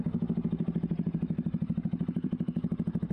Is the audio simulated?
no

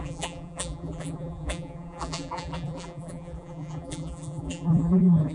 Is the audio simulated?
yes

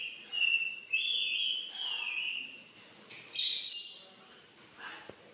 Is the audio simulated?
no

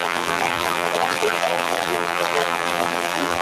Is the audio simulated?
yes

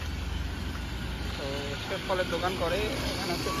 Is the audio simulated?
no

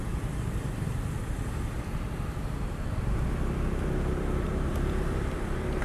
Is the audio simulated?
yes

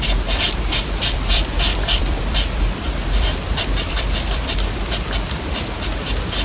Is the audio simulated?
yes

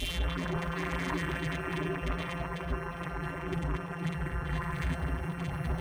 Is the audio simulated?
yes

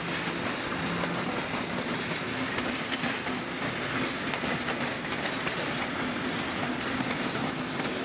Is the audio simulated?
no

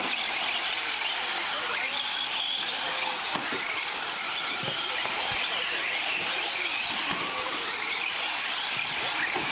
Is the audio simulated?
yes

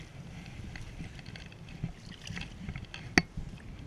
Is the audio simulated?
no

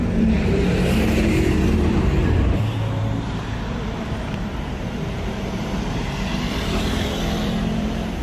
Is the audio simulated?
yes